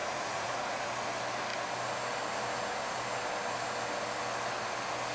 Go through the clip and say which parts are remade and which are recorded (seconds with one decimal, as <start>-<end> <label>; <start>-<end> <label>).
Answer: 0.0-0.9 remade; 0.9-5.1 recorded